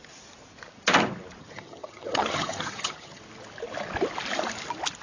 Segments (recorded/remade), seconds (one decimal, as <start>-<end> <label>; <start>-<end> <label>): 0.0-1.4 recorded; 1.4-3.2 remade; 3.2-5.0 recorded